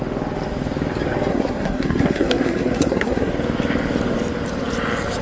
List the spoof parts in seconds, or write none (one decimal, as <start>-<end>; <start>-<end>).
1.3-3.3